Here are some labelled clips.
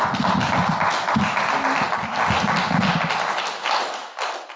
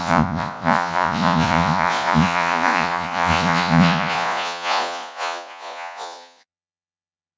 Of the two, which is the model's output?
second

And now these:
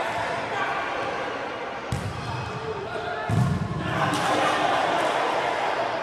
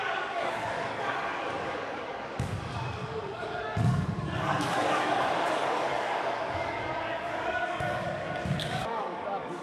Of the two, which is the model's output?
second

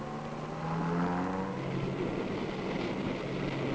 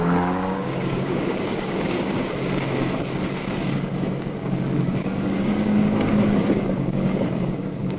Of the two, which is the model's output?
second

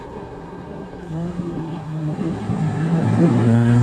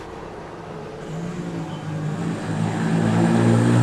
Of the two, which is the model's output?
first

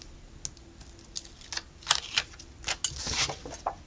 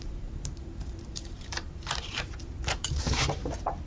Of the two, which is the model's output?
second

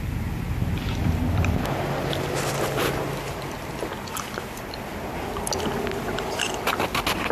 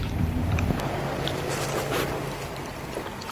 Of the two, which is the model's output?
second